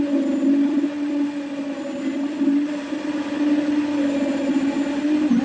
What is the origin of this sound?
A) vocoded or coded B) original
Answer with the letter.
B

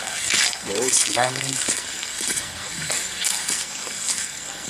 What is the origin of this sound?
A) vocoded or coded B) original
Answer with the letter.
A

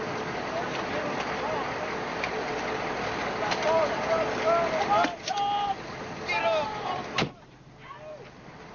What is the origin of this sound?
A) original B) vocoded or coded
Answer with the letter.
A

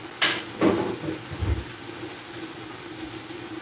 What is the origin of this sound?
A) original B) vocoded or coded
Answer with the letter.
A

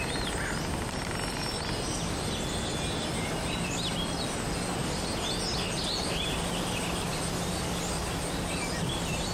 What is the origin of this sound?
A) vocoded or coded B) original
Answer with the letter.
B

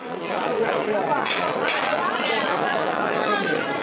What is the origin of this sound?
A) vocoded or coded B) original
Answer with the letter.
A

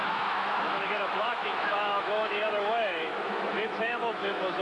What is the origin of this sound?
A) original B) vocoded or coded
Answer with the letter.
B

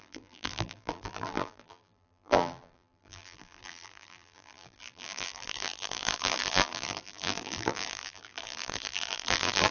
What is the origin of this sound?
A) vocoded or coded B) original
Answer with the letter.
A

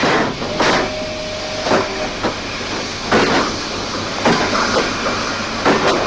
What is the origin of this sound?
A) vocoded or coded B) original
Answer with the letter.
B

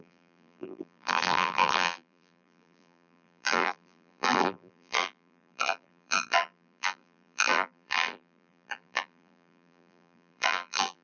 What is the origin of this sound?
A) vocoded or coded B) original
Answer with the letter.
A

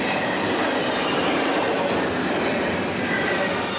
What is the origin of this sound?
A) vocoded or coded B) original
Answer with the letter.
B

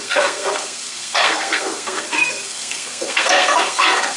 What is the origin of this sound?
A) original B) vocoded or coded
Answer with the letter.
B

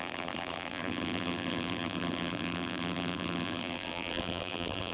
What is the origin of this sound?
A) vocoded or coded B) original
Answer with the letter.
A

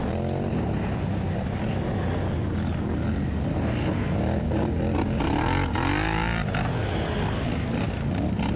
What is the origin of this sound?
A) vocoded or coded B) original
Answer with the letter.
B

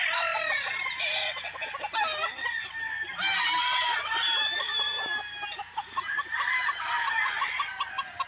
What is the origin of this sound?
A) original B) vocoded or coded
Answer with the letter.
A